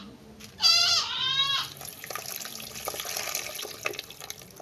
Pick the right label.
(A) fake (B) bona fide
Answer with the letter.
B